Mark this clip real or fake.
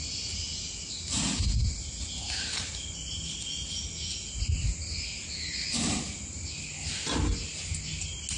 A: real